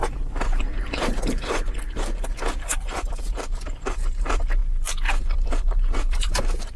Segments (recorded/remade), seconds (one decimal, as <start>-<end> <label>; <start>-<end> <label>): 0.0-4.6 remade; 4.6-5.1 recorded; 5.1-6.8 remade